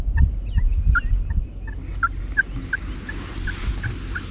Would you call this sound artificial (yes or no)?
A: no